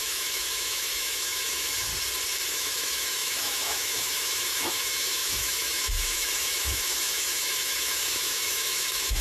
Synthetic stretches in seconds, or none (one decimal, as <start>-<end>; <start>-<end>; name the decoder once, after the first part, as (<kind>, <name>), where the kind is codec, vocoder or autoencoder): 0.0-1.9 (autoencoder, DAC-VAE); 2.5-9.2